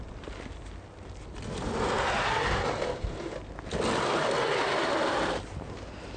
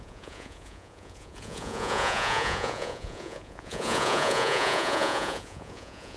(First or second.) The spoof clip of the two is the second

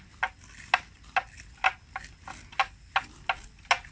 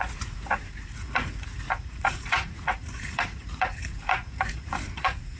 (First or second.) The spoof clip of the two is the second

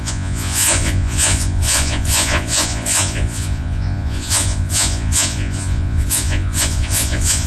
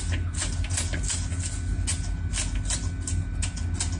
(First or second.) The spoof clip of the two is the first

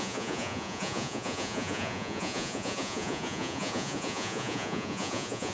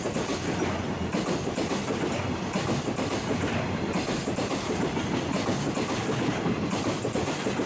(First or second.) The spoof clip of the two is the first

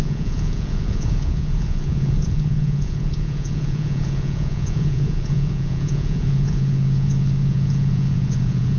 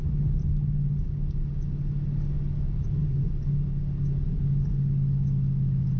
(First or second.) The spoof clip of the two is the first